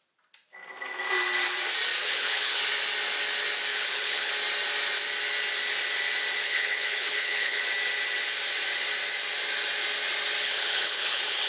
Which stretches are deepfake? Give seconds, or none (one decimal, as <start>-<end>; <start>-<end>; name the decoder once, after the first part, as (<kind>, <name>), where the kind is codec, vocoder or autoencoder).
2.0-2.6 (codec, HILCodec); 3.7-4.3; 6.4-7.6; 10.4-11.5